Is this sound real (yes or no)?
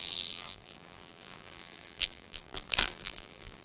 no